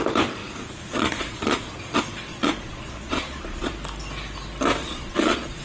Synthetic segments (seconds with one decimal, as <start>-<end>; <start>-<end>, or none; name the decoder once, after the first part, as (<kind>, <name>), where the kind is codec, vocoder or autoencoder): 0.4-1.7 (vocoder, Vocos); 2.3-3.7; 4.8-5.6